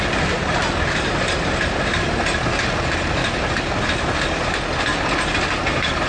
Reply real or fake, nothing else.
real